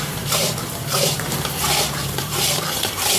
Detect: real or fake fake